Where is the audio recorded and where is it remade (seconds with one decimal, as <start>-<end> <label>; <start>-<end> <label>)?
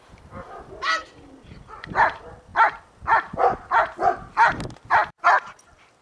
0.0-2.5 remade; 2.5-5.1 recorded; 5.1-6.0 remade